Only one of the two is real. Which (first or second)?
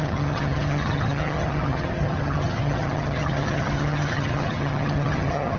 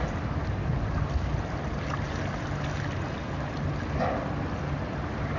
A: second